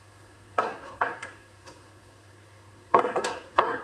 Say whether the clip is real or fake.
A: fake